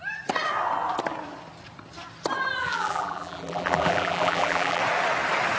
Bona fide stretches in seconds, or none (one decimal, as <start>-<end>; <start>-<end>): 0.0-2.6; 4.8-5.6